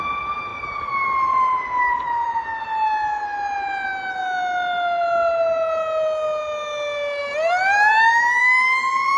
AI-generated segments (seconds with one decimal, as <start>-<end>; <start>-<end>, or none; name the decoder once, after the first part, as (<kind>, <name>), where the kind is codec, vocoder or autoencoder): 7.2-9.2 (vocoder, BigVGAN v2)